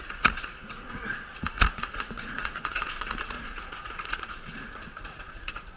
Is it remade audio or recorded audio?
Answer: remade